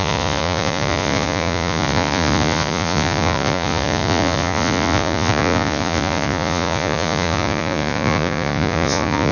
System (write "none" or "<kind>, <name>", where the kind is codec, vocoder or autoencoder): vocoder, Vocos